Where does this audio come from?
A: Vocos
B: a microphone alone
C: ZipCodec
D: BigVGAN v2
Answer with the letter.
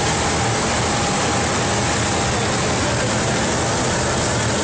B